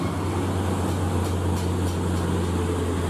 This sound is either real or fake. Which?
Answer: real